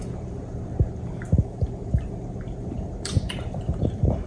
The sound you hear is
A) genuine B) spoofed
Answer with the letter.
B